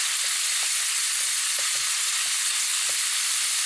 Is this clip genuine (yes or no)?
yes